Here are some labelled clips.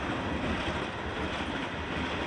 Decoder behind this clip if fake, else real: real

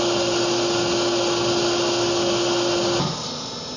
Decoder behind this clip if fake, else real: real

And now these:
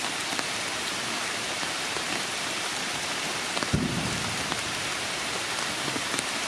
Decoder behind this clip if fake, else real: fake, vocoder, BigVGAN v2